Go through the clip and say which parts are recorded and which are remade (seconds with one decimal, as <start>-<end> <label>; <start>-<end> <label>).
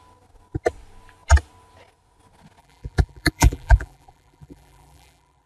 0.0-2.6 recorded; 2.6-5.5 remade